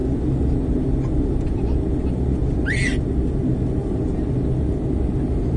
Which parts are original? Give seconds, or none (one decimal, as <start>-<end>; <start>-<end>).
0.0-5.6